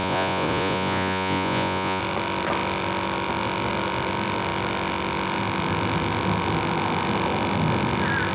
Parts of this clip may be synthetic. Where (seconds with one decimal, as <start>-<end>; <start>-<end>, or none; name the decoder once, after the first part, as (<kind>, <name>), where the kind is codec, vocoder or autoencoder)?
0.0-2.0 (vocoder, Vocos)